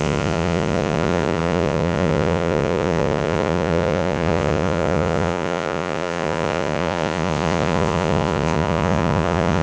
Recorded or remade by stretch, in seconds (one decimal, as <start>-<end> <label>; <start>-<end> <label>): 0.0-9.6 remade